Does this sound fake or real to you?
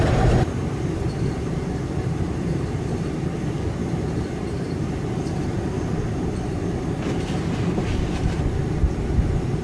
fake